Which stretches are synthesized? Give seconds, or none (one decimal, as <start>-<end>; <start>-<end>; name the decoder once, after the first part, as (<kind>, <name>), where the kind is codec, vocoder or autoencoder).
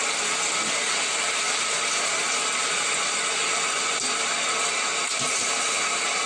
none